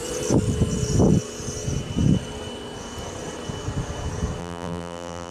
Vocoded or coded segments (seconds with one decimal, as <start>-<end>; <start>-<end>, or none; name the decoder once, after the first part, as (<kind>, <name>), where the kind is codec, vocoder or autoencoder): 4.4-5.3 (vocoder, BigVGAN v2)